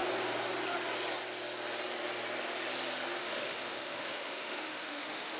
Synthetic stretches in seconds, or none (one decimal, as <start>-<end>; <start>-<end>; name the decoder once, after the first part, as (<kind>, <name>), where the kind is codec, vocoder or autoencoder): 3.2-5.4 (autoencoder, DAC-VAE)